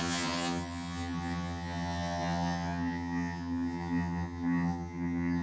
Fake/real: fake